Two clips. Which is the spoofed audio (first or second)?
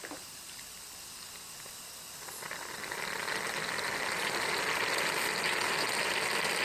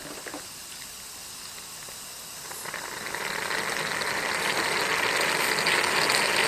first